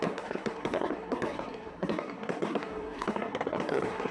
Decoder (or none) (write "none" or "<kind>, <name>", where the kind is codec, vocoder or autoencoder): codec, SNAC